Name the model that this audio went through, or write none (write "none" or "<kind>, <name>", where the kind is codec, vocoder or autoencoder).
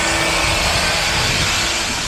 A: none